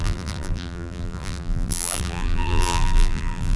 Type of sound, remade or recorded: remade